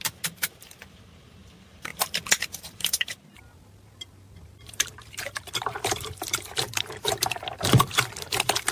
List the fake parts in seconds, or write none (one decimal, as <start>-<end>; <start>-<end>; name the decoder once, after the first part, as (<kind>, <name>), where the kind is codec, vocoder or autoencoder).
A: 0.0-8.7 (vocoder, BigVGAN v2)